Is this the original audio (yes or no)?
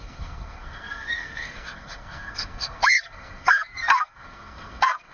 no